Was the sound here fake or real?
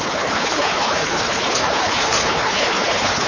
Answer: fake